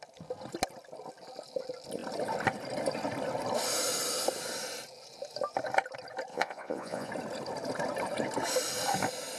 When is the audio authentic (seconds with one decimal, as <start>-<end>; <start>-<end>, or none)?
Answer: 0.0-6.3; 7.1-9.4